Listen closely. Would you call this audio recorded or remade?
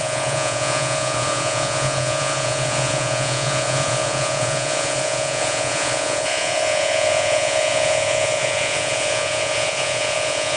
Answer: remade